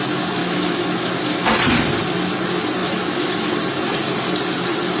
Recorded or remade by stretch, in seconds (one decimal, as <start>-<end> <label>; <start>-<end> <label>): 0.0-0.4 recorded; 0.4-1.1 remade; 1.1-2.8 recorded; 2.8-3.5 remade; 3.5-5.0 recorded